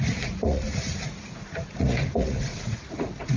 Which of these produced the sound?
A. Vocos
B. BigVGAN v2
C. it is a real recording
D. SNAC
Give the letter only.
A